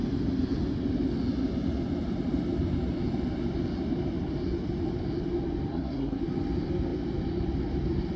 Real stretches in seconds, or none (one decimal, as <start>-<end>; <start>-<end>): 0.0-5.7; 6.2-8.2